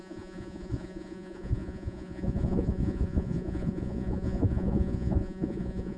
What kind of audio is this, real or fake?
fake